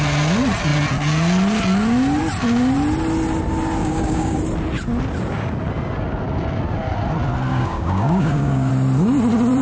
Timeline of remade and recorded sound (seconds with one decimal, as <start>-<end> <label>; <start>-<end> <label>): 0.0-3.8 recorded; 3.8-4.4 remade; 4.4-7.5 recorded; 7.5-8.7 remade; 8.7-9.6 recorded